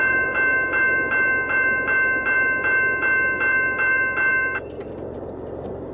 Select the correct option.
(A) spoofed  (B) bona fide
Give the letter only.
A